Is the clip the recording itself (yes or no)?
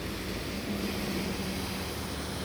yes